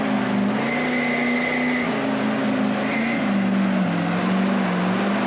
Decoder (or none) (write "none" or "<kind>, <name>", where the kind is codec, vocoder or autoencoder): none